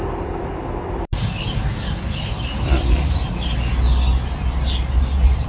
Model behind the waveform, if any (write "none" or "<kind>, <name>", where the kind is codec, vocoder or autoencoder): none